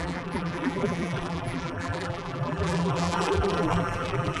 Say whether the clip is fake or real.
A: fake